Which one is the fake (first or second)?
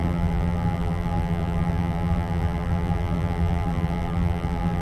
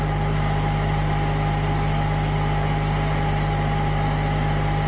first